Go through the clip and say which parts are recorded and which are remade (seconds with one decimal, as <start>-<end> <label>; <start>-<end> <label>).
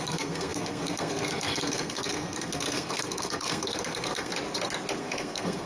0.0-4.3 remade; 4.3-5.0 recorded; 5.0-5.7 remade